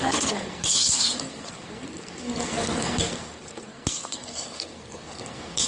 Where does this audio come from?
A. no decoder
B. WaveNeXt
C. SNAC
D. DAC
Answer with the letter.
C